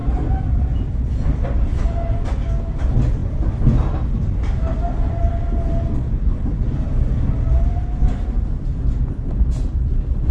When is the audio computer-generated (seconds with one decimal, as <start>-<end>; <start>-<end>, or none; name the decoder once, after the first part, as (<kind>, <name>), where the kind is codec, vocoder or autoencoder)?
none

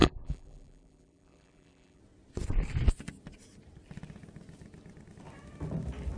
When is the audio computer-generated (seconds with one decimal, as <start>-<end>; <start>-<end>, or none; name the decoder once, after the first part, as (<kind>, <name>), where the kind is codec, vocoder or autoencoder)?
0.0-2.0 (vocoder, BigVGAN v2)

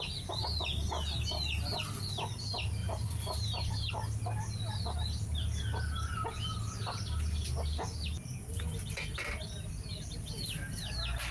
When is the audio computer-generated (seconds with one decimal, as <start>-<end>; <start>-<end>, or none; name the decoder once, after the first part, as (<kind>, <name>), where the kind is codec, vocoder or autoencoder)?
2.8-3.9 (vocoder, BigVGAN v2)

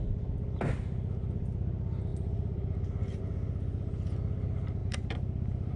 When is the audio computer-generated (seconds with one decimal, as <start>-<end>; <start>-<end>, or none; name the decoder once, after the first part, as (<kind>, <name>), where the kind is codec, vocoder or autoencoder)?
2.1-3.2 (vocoder, BigVGAN v2); 4.8-5.8